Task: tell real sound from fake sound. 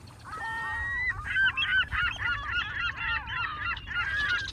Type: real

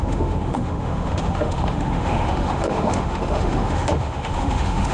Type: fake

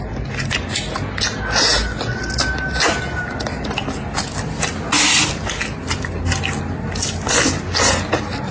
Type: real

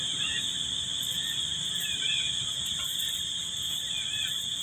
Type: real